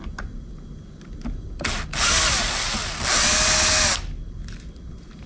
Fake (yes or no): no